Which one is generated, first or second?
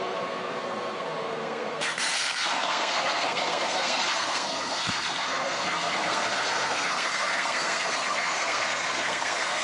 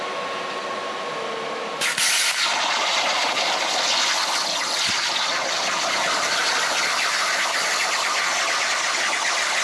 first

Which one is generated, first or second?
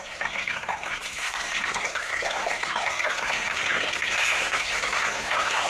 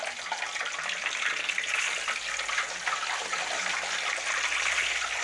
first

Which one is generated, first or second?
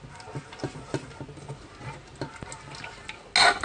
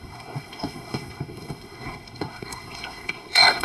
second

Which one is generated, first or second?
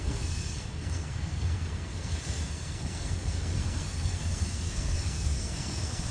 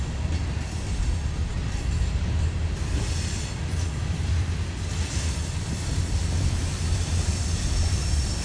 first